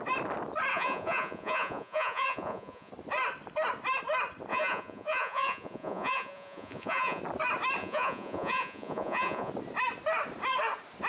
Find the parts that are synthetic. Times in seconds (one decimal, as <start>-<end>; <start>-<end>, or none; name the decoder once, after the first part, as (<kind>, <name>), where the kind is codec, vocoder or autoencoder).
0.7-2.9 (vocoder, Vocos); 4.5-7.2; 7.8-9.5